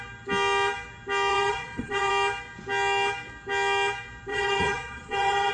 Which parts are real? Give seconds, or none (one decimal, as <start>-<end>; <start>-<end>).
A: 0.0-1.3; 2.1-4.3